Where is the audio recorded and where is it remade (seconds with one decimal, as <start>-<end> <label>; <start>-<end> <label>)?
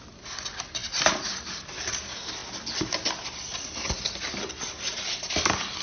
0.0-2.4 recorded; 2.4-4.2 remade; 4.2-5.8 recorded